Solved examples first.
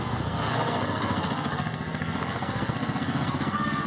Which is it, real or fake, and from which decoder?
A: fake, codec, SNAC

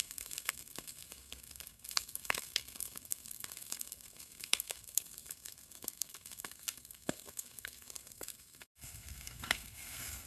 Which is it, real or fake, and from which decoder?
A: fake, codec, SNAC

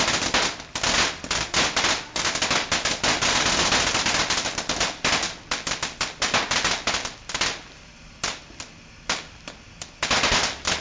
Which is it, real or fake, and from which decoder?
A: real